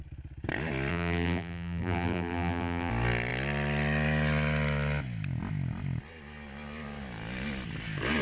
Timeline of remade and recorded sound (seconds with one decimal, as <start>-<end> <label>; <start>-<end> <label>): 0.0-0.9 recorded; 0.9-2.9 remade; 2.9-8.2 recorded